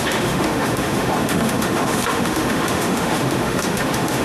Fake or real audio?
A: fake